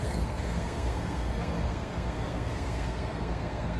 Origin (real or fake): fake